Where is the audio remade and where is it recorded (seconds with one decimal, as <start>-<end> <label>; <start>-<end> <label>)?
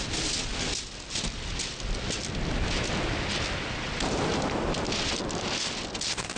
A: 0.0-6.4 recorded